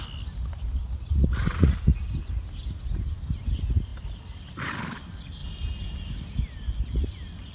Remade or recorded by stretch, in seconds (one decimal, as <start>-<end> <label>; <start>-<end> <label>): 0.0-0.8 recorded; 0.8-2.1 remade; 2.1-7.5 recorded